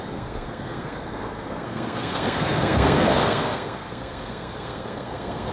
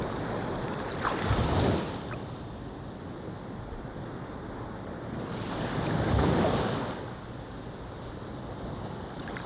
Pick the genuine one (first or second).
second